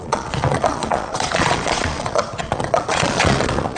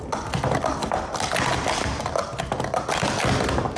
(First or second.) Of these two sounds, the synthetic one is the first